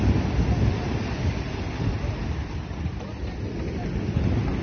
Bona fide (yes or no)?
yes